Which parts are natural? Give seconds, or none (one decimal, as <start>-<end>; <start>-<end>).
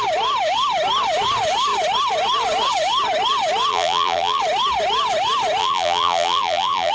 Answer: 0.0-3.7; 4.4-5.6